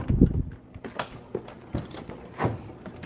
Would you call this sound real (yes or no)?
yes